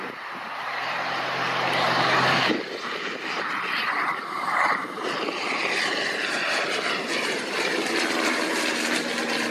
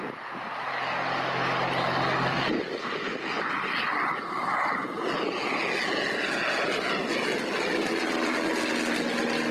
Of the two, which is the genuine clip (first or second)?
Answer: second